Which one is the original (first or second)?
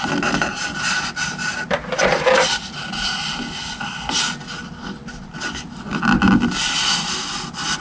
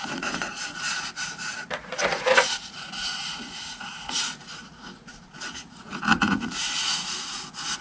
first